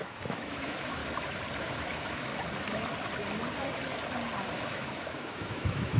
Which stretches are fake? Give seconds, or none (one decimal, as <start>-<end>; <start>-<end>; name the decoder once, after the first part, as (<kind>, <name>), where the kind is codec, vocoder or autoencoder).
0.0-1.0 (autoencoder, DAC-VAE); 1.6-2.3; 4.5-6.0

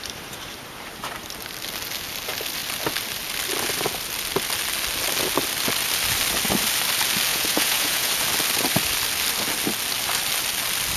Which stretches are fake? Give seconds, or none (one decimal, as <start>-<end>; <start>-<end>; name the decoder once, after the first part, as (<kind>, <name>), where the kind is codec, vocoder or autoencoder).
7.3-8.1 (vocoder, Vocos)

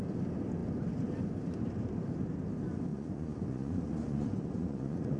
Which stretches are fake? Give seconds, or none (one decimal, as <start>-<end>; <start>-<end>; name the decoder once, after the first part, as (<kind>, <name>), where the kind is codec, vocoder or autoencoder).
2.9-5.2 (vocoder, Vocos)

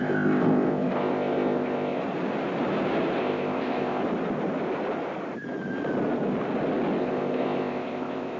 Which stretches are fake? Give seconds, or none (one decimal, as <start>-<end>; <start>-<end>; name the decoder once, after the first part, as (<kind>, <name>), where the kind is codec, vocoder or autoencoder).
0.0-2.0 (codec, ZipCodec); 3.2-4.0; 7.0-8.4

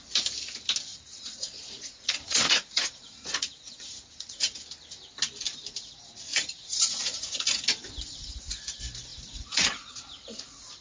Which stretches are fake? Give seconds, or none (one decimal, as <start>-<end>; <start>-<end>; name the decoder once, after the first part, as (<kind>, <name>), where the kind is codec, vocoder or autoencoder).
0.9-4.6 (vocoder, Vocos); 6.3-7.6; 9.1-9.9

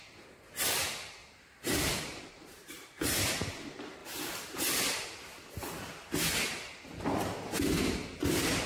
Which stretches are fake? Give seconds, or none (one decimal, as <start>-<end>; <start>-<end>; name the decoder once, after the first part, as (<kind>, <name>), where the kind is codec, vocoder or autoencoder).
1.2-3.3 (vocoder, BigVGAN v2)